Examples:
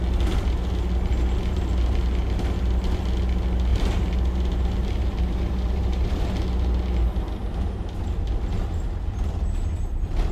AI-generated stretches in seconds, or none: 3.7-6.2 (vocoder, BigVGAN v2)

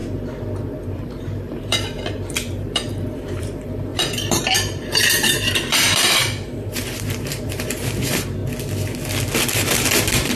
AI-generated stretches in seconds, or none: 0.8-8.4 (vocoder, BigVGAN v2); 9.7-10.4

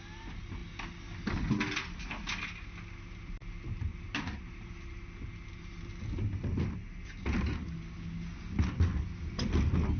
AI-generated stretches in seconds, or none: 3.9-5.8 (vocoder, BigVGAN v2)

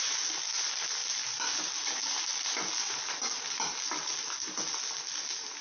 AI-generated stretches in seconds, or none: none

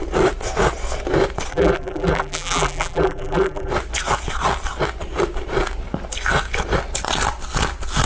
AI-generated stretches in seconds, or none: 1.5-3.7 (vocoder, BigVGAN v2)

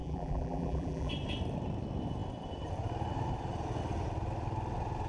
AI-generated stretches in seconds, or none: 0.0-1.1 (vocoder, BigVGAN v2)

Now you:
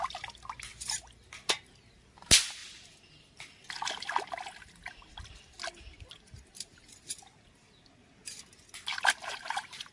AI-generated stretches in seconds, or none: 8.9-9.9 (vocoder, BigVGAN v2)